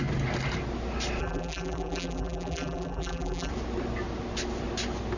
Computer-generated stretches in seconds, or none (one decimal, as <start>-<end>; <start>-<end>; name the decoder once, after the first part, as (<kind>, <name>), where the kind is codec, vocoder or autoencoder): 1.2-3.5 (vocoder, BigVGAN v2)